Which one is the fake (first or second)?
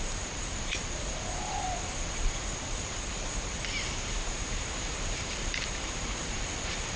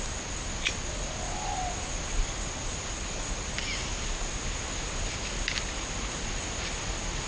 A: first